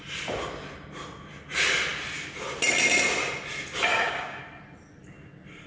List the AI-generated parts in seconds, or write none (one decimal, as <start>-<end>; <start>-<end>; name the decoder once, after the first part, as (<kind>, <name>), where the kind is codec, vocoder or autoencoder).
3.9-4.4 (codec, DAC)